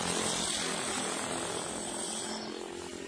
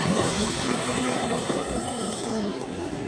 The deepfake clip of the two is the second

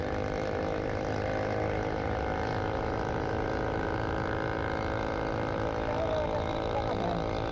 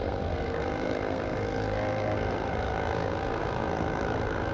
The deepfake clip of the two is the second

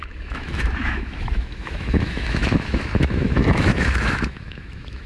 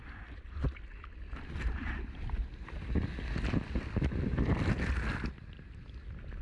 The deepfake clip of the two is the first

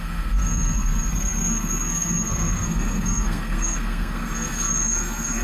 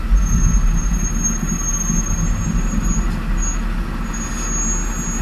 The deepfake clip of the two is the first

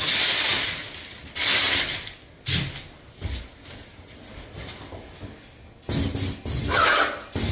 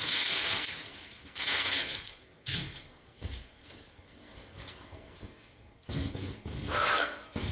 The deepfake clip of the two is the second